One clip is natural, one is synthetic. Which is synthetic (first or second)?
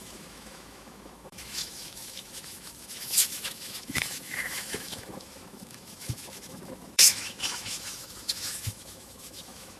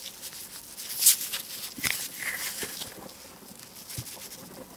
first